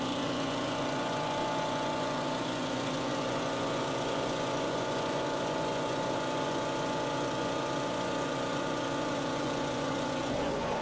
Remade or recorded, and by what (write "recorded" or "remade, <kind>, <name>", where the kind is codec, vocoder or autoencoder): remade, vocoder, Vocos